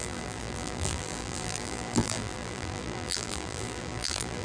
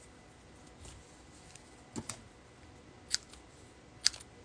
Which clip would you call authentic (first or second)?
second